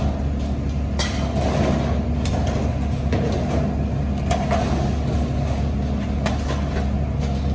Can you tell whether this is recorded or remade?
recorded